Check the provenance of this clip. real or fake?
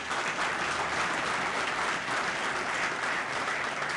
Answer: real